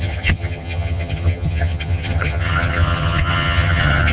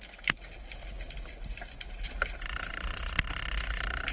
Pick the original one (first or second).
second